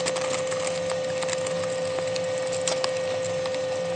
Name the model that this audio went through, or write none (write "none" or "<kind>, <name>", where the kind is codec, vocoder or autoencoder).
none